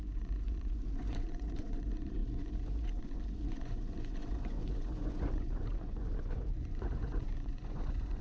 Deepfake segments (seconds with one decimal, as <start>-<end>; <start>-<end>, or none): 0.0-8.2